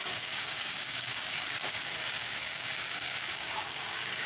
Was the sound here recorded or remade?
remade